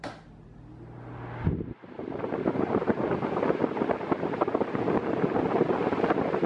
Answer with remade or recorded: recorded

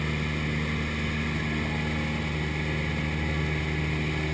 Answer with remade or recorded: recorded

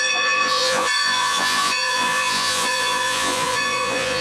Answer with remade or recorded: remade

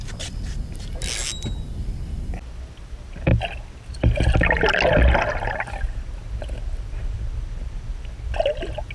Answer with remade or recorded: recorded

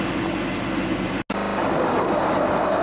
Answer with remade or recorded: recorded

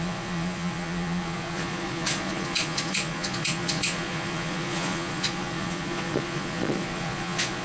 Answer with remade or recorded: remade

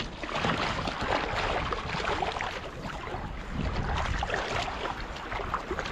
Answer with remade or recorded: recorded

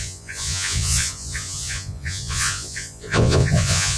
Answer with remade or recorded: remade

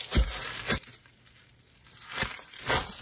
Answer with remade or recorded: recorded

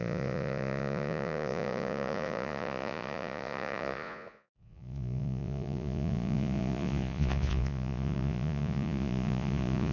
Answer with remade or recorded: remade